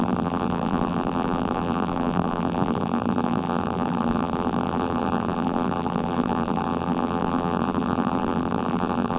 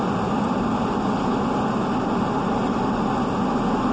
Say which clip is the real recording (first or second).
second